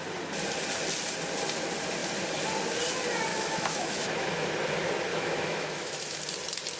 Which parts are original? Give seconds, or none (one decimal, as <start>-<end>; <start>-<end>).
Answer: 0.0-3.3; 4.5-5.1; 6.2-6.8